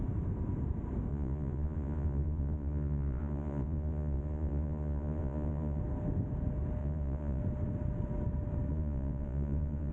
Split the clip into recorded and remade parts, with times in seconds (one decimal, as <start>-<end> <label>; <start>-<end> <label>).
0.0-1.1 recorded; 1.1-5.8 remade; 5.8-6.8 recorded; 6.8-7.4 remade; 7.4-8.7 recorded; 8.7-9.9 remade